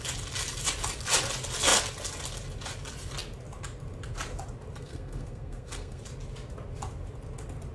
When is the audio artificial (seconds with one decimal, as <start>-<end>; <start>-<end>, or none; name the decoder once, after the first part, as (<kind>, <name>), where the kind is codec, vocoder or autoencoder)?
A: 4.8-6.0 (codec, SNAC)